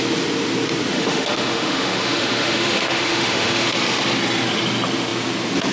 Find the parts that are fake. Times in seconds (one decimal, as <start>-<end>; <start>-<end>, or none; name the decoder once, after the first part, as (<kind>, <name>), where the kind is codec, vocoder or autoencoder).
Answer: 0.9-3.7 (autoencoder, DAC-VAE)